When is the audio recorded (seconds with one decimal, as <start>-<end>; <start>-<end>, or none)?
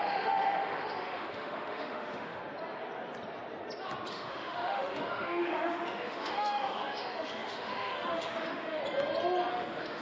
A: 2.4-4.1; 8.8-9.5